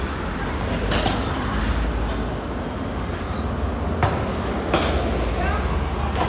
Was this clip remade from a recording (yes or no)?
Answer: no